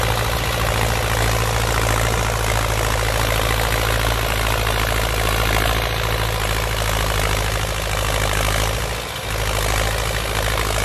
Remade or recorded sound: recorded